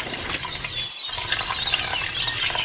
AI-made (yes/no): no